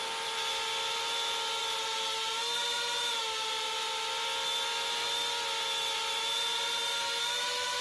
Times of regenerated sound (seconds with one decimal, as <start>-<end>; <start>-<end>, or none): none